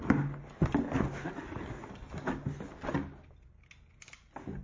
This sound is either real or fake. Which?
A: real